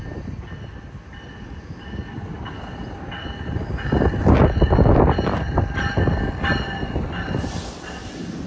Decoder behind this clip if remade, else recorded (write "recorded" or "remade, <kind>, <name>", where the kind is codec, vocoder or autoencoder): recorded